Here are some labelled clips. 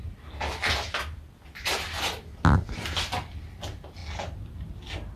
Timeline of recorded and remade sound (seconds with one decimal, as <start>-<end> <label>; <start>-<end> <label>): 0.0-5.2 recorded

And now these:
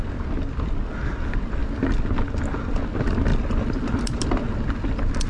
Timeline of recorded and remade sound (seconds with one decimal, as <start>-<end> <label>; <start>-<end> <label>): 0.0-5.3 recorded

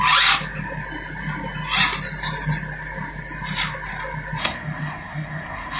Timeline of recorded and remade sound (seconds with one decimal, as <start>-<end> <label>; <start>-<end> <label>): 0.0-4.4 recorded; 4.4-5.8 remade

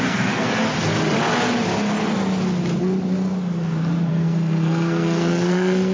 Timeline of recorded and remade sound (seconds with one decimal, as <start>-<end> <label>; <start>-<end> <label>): 0.0-0.6 remade; 0.6-4.1 recorded; 4.1-5.9 remade